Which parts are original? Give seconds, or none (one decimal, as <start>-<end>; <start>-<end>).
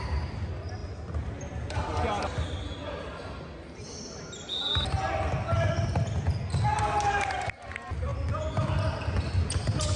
0.0-10.0